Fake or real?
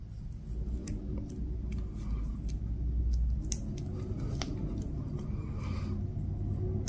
real